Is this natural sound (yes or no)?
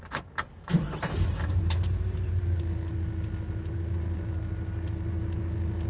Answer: yes